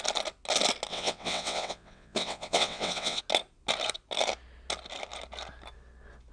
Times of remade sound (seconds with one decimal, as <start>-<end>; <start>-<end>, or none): 0.9-3.2